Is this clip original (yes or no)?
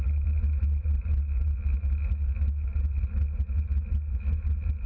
yes